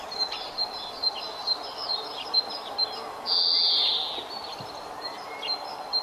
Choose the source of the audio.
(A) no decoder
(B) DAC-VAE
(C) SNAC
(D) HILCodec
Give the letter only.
A